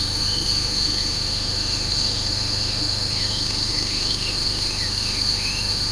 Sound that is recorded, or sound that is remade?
remade